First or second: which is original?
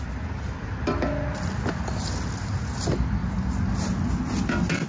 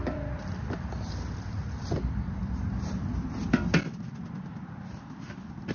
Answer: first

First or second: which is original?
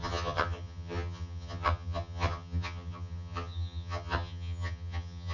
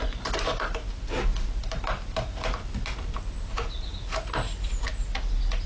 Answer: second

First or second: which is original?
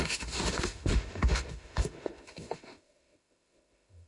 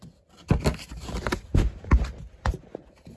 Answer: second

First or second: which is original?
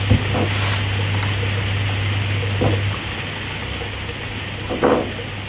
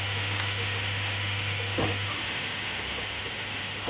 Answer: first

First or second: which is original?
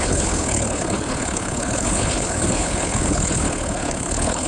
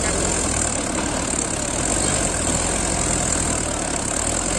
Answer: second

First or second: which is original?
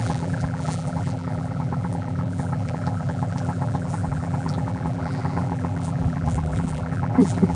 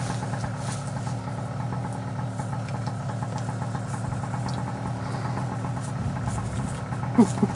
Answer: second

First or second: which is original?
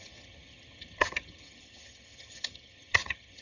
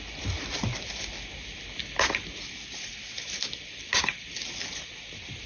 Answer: second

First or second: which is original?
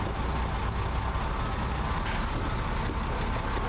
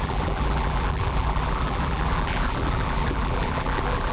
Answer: first